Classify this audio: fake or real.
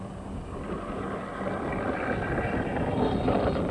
real